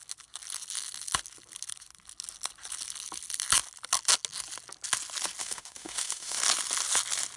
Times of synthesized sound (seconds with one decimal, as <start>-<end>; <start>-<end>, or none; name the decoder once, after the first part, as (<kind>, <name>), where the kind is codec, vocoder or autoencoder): 5.4-6.4 (autoencoder, DAC-VAE)